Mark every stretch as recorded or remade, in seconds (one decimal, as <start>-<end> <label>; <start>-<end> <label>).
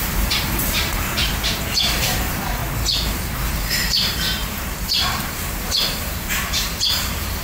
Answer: 0.0-2.6 remade; 2.6-3.2 recorded; 3.2-7.4 remade